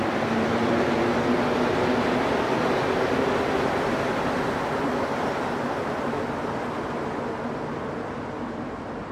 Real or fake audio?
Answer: real